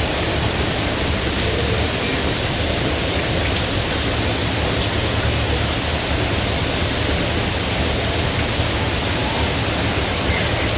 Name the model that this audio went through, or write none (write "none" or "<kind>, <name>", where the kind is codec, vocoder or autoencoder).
none